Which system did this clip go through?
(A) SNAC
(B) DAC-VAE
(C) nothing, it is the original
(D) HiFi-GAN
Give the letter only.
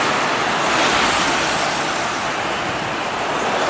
C